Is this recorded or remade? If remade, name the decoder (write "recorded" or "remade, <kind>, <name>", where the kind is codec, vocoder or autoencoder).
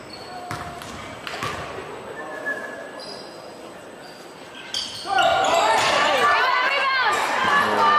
recorded